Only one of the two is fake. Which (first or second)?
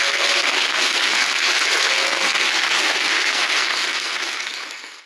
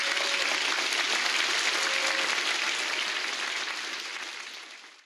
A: first